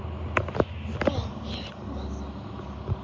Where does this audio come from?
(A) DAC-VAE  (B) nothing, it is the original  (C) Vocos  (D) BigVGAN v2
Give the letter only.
B